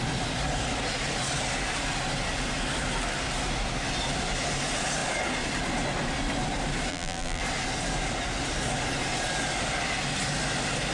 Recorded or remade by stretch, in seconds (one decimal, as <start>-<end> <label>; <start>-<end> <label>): 0.0-6.9 recorded; 6.9-7.4 remade; 7.4-10.9 recorded